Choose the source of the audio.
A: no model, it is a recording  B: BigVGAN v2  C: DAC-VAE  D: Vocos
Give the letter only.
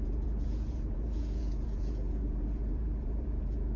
D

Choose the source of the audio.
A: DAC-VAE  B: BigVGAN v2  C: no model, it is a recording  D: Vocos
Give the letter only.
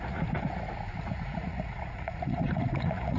D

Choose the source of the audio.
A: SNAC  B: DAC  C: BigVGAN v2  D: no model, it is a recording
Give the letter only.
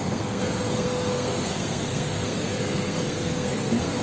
A